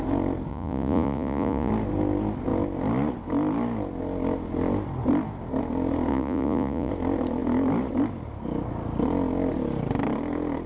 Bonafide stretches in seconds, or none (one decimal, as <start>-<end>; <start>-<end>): 0.0-0.5; 1.7-6.1; 6.9-10.7